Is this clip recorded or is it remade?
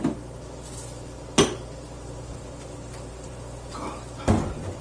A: recorded